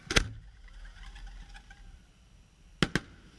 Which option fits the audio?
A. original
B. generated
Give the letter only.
A